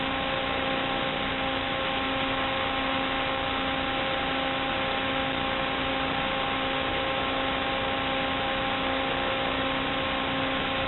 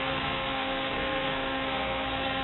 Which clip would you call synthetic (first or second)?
second